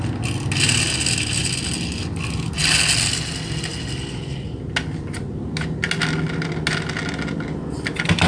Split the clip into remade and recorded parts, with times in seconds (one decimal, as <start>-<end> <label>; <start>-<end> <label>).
0.0-8.3 recorded